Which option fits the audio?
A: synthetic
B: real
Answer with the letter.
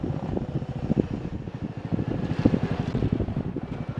B